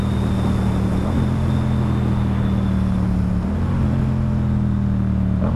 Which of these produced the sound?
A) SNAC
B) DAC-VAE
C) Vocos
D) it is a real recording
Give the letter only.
D